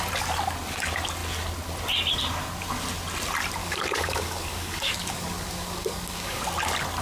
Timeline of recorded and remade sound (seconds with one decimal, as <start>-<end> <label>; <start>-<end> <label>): 0.0-3.6 recorded; 3.6-6.4 remade; 6.4-7.0 recorded